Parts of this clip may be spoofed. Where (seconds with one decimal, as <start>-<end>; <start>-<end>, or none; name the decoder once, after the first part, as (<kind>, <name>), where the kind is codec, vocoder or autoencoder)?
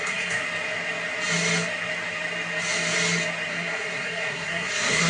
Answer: 0.0-0.4 (codec, SNAC); 3.5-5.1